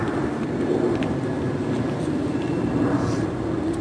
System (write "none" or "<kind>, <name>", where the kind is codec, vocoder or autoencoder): none